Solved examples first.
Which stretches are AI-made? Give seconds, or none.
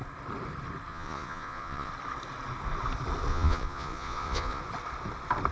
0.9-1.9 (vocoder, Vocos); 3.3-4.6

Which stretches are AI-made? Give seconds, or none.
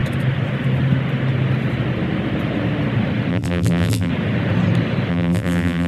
3.3-4.1 (vocoder, BigVGAN v2); 5.1-5.9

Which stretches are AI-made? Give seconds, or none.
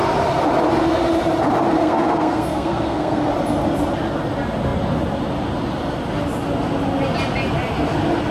1.8-3.3 (codec, SNAC)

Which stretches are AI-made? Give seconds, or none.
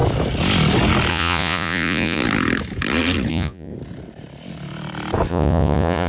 1.1-2.2 (vocoder, Vocos); 3.3-3.7; 5.3-6.1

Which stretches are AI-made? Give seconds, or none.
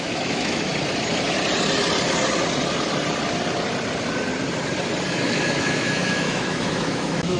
0.0-0.7 (autoencoder, DAC-VAE); 5.1-7.4